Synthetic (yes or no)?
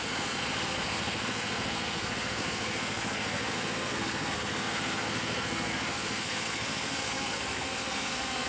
yes